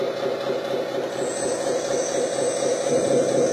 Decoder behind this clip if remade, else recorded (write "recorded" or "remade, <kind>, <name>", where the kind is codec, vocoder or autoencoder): recorded